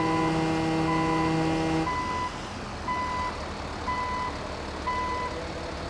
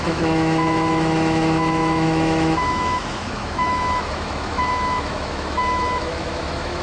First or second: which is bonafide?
first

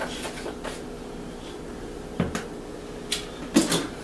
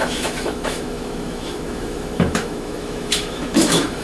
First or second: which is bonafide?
first